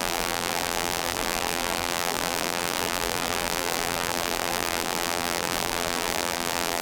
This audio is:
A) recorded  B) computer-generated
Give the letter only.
B